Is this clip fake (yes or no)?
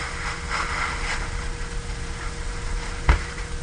no